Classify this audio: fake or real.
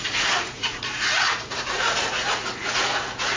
fake